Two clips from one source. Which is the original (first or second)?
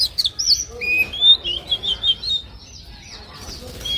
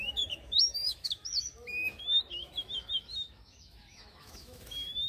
first